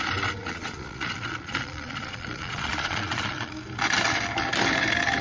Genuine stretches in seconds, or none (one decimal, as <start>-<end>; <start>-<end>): 0.0-0.4; 3.5-5.2

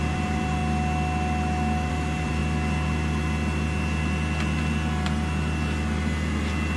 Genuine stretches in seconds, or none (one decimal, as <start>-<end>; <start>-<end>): 0.6-1.9; 2.4-6.8